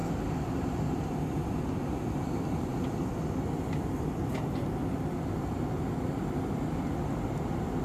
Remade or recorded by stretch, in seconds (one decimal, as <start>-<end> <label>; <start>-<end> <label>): 0.0-1.1 remade; 1.1-7.8 recorded